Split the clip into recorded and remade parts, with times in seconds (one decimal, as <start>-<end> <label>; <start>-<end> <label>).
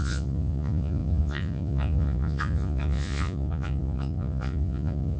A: 0.0-5.2 remade